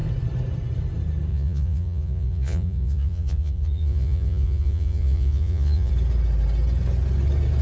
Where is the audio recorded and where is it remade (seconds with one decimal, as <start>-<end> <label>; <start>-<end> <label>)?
0.0-1.3 recorded; 1.3-5.9 remade; 5.9-7.6 recorded